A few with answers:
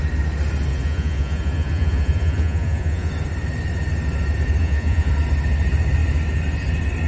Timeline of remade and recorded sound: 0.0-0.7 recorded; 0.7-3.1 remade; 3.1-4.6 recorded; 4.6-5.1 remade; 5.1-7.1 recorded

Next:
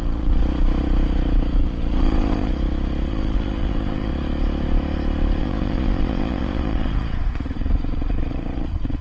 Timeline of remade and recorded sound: 0.0-0.4 remade; 0.4-1.6 recorded; 1.6-2.5 remade; 2.5-3.1 recorded; 3.1-4.1 remade; 4.1-5.4 recorded; 5.4-9.0 remade

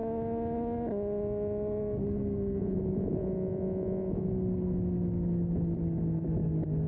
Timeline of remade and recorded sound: 0.0-2.6 recorded; 2.6-4.3 remade; 4.3-6.9 recorded